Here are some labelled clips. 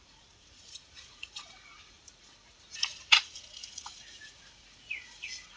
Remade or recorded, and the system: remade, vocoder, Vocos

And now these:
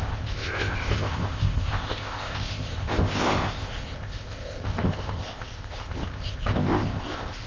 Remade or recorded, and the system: remade, codec, ZipCodec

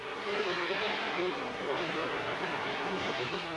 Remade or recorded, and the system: remade, codec, SNAC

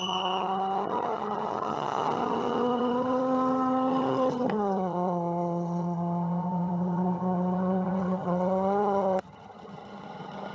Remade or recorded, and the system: remade, vocoder, HiFi-GAN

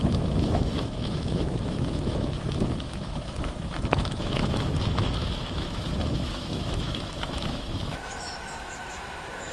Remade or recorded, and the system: remade, autoencoder, DAC-VAE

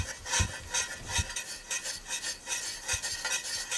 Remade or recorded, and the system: recorded